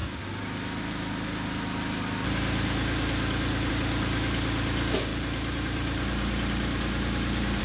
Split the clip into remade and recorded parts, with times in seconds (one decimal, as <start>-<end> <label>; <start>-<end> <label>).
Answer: 0.0-5.1 recorded; 5.1-7.6 remade